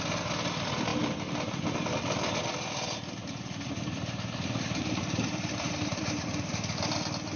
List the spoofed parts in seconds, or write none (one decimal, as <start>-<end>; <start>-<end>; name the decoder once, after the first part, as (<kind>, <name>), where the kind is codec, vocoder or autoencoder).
0.9-2.4 (vocoder, BigVGAN v2); 3.2-6.5